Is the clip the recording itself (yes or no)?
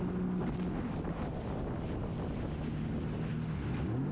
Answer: yes